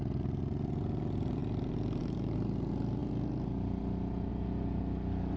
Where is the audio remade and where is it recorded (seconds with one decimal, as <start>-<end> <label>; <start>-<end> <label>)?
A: 0.0-5.4 recorded